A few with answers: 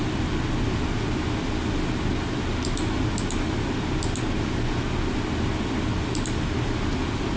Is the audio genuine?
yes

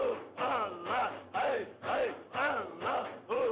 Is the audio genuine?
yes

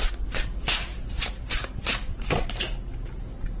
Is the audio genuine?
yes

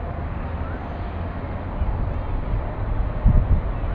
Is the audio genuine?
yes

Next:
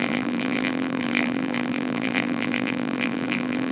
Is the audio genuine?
no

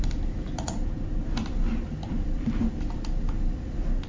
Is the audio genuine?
no